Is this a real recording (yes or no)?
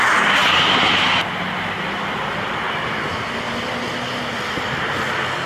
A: yes